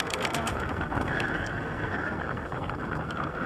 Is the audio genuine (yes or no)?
no